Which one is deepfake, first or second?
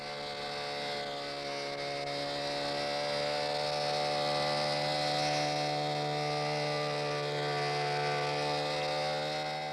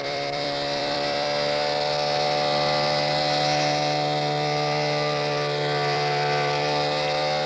second